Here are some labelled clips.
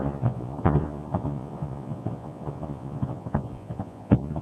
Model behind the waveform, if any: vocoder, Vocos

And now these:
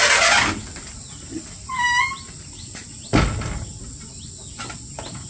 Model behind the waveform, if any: none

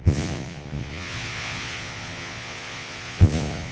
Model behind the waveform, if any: vocoder, Vocos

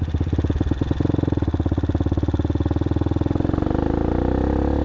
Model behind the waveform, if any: none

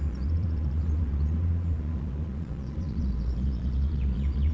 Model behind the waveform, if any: vocoder, Vocos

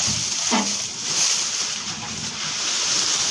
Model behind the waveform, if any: none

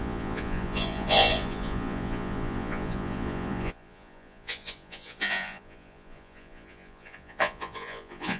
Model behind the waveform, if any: vocoder, Vocos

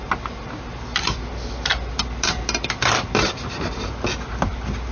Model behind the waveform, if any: none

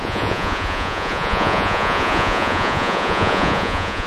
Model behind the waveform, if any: vocoder, Vocos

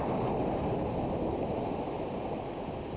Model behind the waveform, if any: none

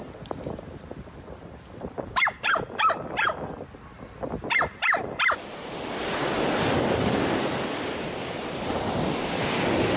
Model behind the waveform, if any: none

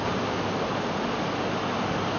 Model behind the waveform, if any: none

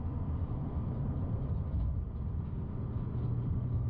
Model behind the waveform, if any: none